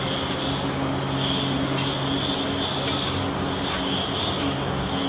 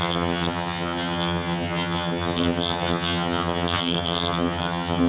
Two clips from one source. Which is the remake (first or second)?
second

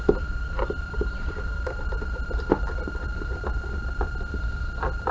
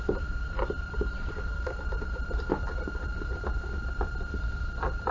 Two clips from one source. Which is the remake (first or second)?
second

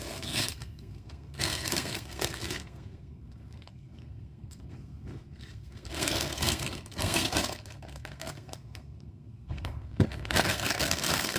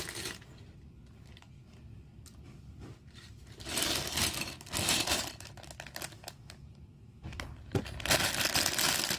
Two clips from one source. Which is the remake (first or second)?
first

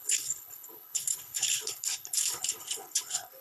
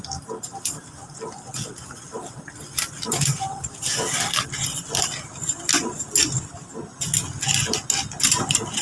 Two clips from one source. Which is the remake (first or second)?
first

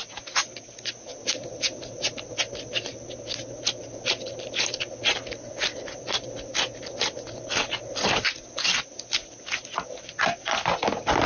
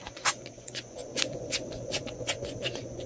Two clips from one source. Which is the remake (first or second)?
second